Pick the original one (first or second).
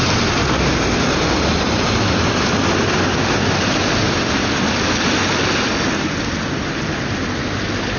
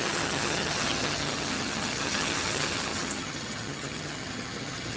first